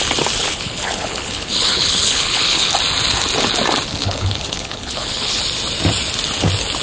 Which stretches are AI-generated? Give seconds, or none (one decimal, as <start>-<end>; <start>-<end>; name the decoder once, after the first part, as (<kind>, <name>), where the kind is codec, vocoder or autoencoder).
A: 0.4-2.7 (codec, HILCodec); 4.0-5.4